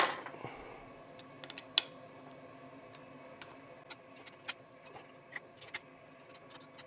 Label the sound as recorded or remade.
recorded